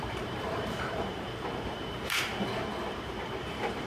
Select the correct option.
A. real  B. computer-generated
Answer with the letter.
B